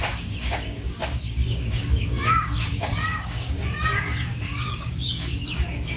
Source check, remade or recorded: remade